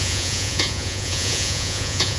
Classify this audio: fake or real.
fake